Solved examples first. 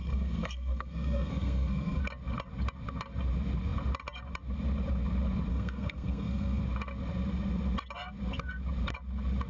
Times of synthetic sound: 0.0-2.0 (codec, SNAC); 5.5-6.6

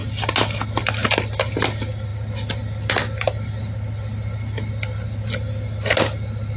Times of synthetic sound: none

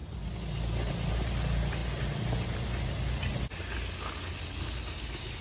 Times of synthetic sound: none

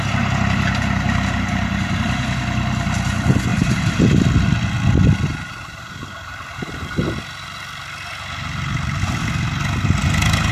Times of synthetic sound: 3.5-4.0 (vocoder, BigVGAN v2); 5.3-7.0

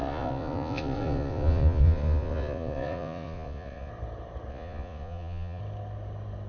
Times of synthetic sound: 0.0-3.9 (vocoder, Vocos); 4.5-5.6

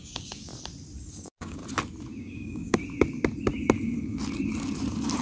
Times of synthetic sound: 0.0-0.5 (codec, DAC); 1.1-1.6; 2.2-2.8

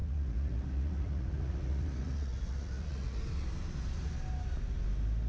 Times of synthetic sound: 0.0-3.2 (vocoder, Vocos)

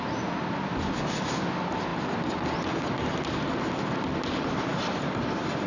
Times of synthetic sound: none